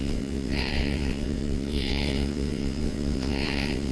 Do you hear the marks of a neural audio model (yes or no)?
yes